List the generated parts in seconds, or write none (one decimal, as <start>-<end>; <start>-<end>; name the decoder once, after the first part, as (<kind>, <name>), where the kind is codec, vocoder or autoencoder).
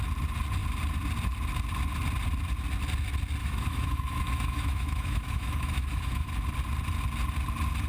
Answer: 3.4-6.3 (autoencoder, DAC-VAE)